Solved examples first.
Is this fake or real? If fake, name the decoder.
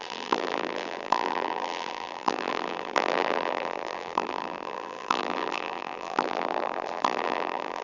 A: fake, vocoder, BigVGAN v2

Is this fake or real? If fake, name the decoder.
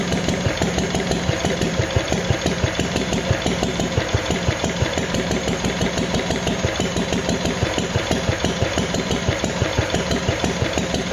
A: fake, vocoder, BigVGAN v2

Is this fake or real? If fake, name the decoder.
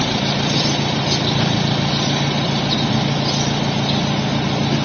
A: real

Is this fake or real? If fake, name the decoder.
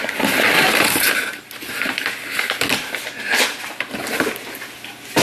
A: real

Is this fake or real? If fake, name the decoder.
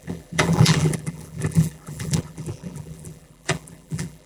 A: fake, vocoder, BigVGAN v2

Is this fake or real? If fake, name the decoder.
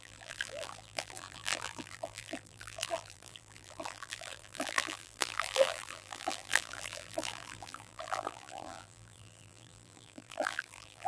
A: fake, vocoder, BigVGAN v2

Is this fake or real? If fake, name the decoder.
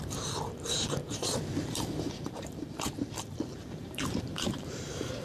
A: fake, vocoder, BigVGAN v2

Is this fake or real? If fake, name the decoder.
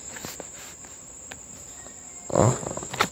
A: fake, vocoder, BigVGAN v2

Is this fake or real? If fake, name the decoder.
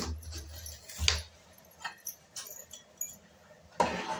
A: real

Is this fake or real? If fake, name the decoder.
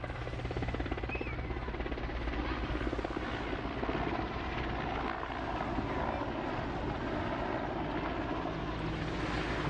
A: real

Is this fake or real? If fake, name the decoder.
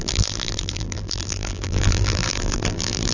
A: fake, vocoder, BigVGAN v2